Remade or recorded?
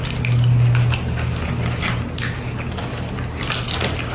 recorded